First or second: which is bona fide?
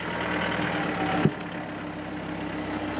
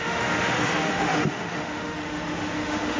first